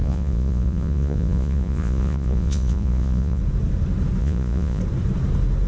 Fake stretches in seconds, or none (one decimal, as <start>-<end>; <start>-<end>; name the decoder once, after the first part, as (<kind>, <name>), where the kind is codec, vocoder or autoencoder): 0.0-3.4 (vocoder, Vocos); 4.2-4.8